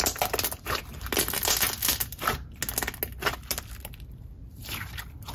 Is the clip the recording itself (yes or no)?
yes